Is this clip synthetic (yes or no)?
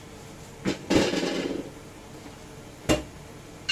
no